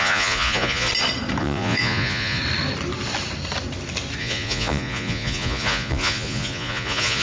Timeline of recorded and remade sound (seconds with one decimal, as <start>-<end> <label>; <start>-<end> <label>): 0.0-0.9 remade; 0.9-1.4 recorded; 1.4-2.4 remade; 2.4-4.2 recorded; 4.2-7.2 remade